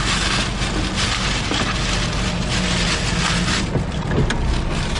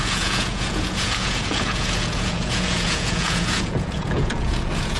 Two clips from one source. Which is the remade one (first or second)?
second